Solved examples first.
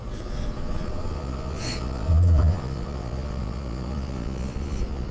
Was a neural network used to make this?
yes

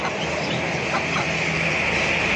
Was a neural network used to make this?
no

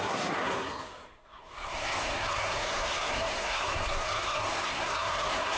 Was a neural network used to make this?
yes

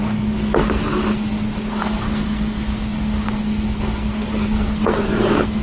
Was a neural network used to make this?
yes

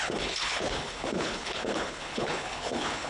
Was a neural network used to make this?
yes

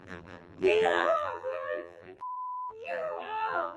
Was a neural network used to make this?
yes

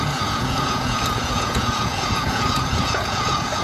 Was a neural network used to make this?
yes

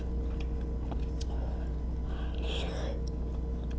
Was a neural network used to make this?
no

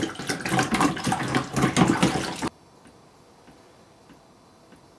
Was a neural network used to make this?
no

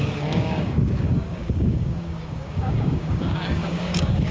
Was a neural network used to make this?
yes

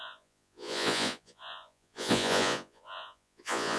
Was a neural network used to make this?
yes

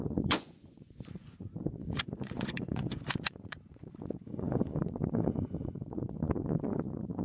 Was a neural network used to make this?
yes